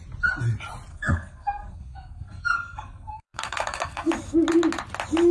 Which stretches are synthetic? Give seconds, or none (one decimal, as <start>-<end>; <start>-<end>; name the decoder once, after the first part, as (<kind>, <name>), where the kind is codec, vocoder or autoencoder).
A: 0.9-4.1 (codec, SNAC)